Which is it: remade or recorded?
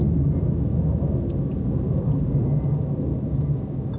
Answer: recorded